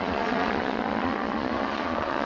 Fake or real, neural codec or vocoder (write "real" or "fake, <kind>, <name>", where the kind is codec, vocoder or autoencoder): fake, vocoder, Vocos